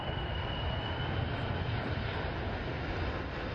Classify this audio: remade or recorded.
recorded